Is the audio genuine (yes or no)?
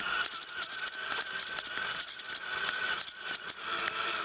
yes